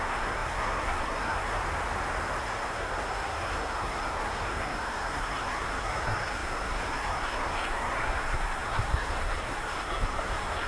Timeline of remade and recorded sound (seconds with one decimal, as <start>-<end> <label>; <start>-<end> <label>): 0.0-1.6 remade; 1.6-2.4 recorded; 2.4-10.7 remade